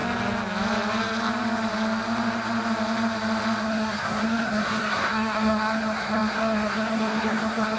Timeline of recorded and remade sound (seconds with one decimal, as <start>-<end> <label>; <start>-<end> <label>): 0.0-3.6 recorded; 3.6-7.8 remade